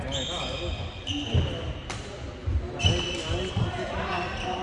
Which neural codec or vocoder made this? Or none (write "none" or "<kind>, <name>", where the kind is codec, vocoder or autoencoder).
none